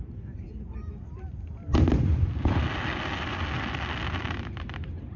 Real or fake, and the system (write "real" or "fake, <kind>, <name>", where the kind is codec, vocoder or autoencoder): real